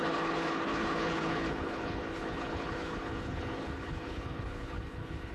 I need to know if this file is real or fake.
fake